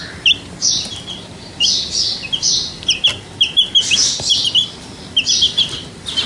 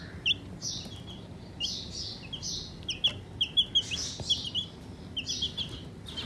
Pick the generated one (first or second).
first